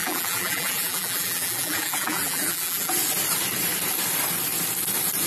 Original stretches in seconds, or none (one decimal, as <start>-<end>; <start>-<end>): 2.9-5.3